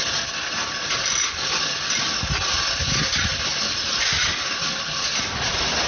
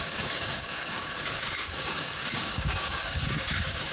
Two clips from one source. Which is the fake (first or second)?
second